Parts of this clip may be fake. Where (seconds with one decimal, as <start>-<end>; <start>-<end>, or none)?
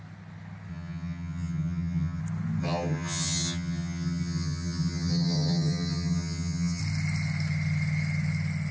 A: 0.7-2.2; 2.6-6.8